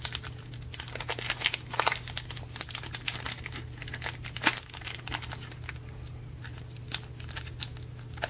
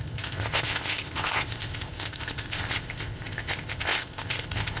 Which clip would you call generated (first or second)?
second